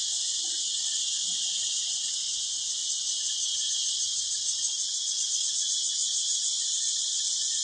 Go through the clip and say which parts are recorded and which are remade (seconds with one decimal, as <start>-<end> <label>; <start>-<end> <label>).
0.0-2.8 remade; 2.8-5.0 recorded; 5.0-6.0 remade; 6.0-6.8 recorded; 6.8-7.6 remade